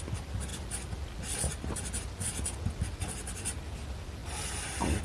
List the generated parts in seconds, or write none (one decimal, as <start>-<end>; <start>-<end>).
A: none